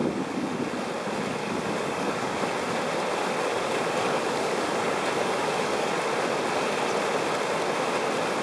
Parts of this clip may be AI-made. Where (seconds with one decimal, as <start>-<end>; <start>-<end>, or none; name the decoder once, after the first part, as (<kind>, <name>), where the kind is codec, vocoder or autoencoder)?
0.0-0.6 (codec, DAC); 1.4-2.4; 3.5-5.9